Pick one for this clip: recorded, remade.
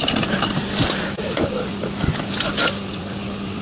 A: recorded